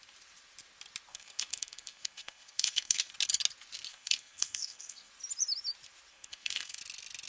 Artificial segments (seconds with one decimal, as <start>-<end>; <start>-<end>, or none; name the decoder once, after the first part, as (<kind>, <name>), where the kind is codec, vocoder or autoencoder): 1.1-3.1 (codec, SNAC); 3.9-5.1; 6.1-6.8